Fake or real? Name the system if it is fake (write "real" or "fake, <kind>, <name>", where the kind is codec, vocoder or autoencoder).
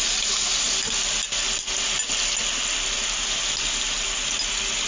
real